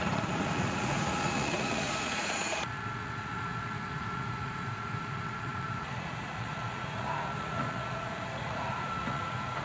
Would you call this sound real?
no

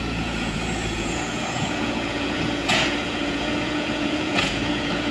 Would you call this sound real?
no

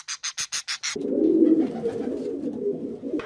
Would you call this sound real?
yes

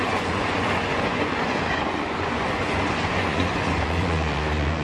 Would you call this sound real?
no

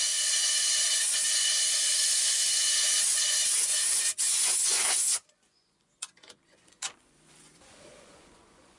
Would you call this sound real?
no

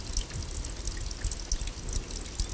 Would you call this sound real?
yes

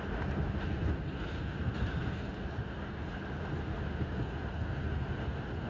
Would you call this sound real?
yes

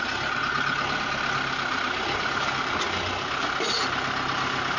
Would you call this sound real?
yes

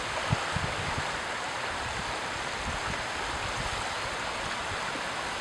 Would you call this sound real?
yes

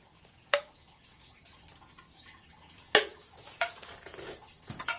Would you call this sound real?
no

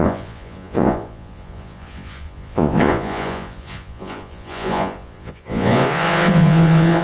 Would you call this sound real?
no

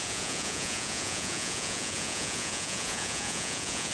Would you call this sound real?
no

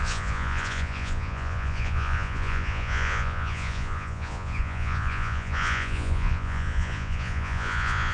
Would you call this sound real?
no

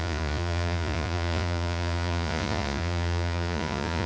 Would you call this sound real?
no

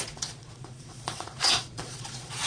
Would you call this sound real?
no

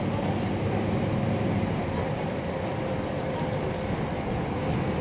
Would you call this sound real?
yes